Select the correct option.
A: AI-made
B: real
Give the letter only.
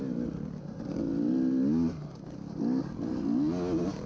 B